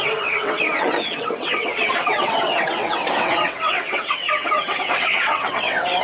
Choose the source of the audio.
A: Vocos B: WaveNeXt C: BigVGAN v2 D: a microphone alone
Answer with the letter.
B